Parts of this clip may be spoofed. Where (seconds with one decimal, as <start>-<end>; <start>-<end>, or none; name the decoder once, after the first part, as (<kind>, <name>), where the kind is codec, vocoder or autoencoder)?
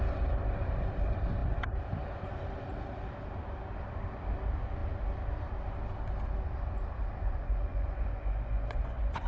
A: 7.2-9.3 (vocoder, Vocos)